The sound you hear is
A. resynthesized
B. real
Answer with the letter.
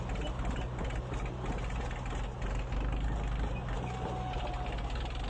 B